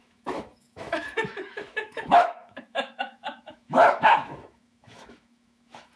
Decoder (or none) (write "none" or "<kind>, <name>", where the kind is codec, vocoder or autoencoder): autoencoder, DAC-VAE